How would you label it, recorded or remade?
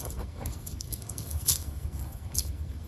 remade